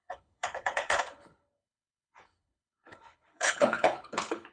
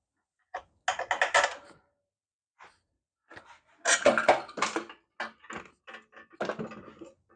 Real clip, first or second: second